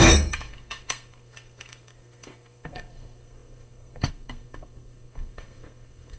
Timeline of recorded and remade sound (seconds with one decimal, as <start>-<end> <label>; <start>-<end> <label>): 0.0-6.2 remade